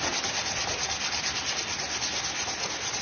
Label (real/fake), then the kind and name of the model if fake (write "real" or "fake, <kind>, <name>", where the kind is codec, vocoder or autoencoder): real